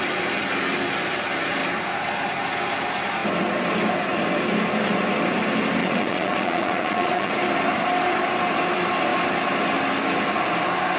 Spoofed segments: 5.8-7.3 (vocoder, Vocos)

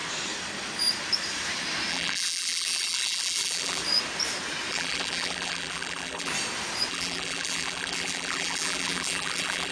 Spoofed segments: 1.9-3.8 (vocoder, BigVGAN v2); 4.7-6.3; 6.9-9.7